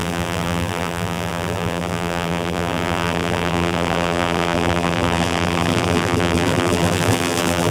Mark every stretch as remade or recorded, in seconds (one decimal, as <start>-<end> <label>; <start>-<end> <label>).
0.0-7.7 remade